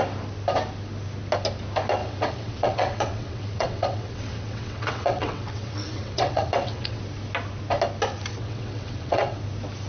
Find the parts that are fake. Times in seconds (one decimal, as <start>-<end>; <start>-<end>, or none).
2.0-7.0; 8.3-9.4